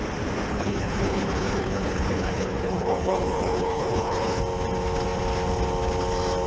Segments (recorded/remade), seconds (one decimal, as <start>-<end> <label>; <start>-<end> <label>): 0.0-0.5 recorded; 0.5-4.4 remade; 4.4-6.5 recorded